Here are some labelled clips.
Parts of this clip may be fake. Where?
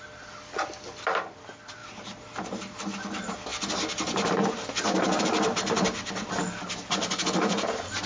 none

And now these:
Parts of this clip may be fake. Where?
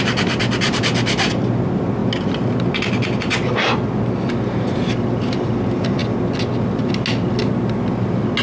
none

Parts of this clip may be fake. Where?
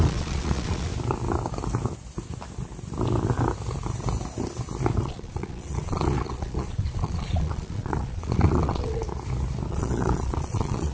0.0-0.9 (vocoder, Vocos); 5.0-9.0; 9.7-10.9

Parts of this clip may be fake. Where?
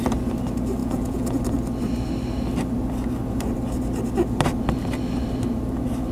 0.8-1.4 (vocoder, Vocos)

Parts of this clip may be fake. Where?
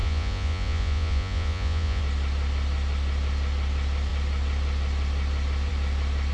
0.0-2.0 (vocoder, Vocos)